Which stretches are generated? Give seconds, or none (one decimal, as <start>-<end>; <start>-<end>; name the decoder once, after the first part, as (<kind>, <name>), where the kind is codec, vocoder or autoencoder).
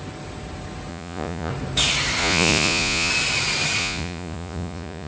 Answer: 0.9-1.5 (vocoder, Vocos); 2.2-3.1; 3.8-5.1